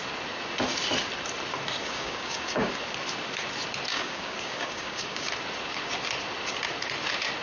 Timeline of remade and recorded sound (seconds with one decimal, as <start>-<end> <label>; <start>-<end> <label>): 0.0-1.8 recorded; 1.8-2.8 remade; 2.8-3.9 recorded; 3.9-5.3 remade; 5.3-7.4 recorded